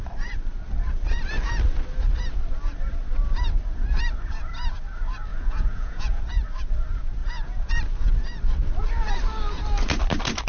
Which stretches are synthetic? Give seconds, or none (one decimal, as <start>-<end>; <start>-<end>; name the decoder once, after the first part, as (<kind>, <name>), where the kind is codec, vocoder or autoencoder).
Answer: 5.3-6.2 (vocoder, Vocos); 7.2-7.7